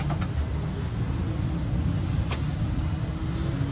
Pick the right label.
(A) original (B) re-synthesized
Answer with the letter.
A